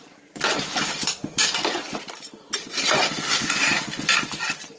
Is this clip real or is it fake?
fake